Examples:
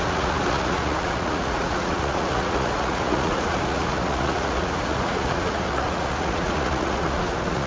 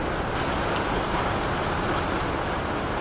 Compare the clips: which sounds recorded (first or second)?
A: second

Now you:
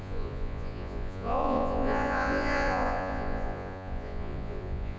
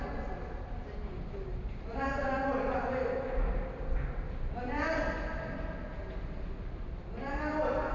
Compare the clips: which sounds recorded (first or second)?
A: second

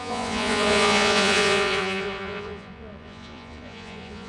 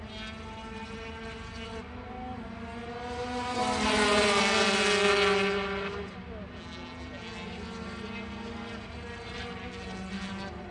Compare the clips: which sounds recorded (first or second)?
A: second